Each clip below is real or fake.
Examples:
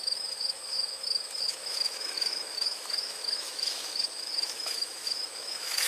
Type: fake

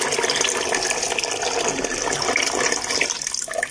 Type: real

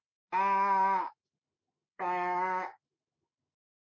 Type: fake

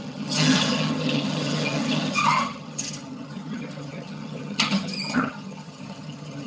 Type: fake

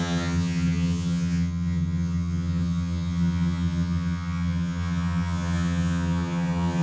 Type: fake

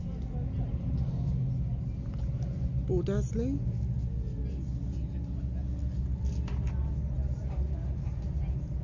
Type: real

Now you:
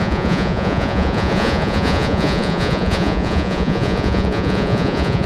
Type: fake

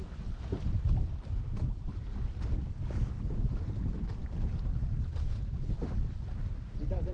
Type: real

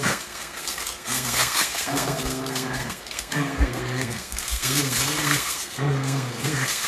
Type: fake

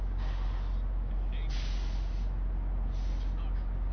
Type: real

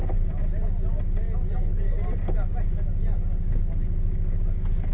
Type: real